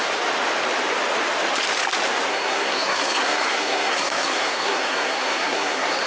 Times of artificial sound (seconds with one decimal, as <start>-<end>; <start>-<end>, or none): 2.3-6.1